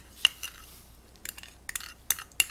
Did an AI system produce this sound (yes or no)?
no